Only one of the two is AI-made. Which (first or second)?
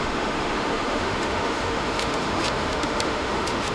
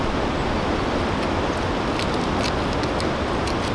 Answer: first